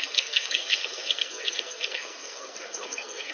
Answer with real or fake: fake